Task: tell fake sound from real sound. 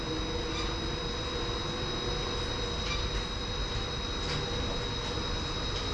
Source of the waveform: real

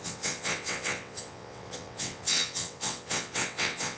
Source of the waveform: fake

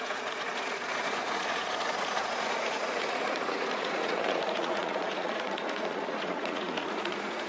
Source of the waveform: fake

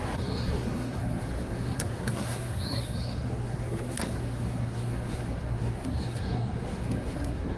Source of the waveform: fake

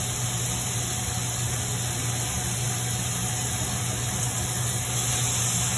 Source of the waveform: real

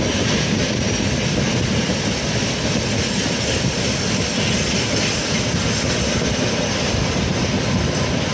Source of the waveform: real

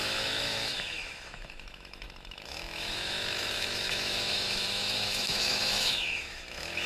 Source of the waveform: fake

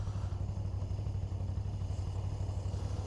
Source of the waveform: real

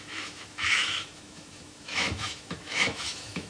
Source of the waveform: fake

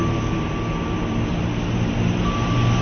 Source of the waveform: real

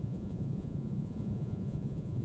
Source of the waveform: fake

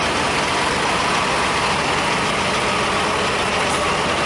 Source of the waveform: real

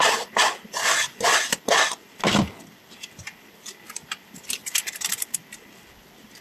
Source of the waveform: real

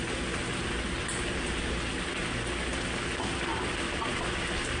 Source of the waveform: real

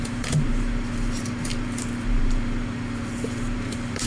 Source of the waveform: fake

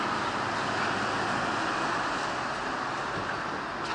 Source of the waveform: real